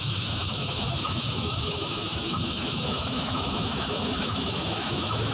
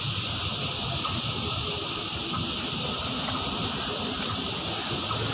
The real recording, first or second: second